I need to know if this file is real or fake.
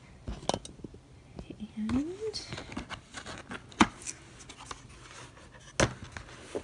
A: real